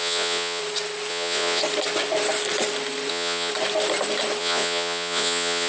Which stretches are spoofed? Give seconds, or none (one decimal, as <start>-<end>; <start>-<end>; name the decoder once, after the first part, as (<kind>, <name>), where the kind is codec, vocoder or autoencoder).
0.0-0.6 (vocoder, Vocos); 1.1-1.6; 3.1-3.5; 4.4-5.7